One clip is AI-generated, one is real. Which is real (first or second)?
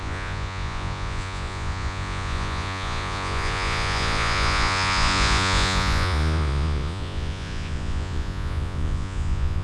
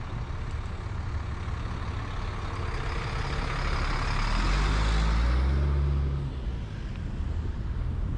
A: second